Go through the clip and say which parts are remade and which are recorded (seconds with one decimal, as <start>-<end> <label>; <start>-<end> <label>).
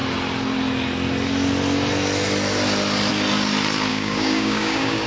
0.0-3.9 recorded; 3.9-5.1 remade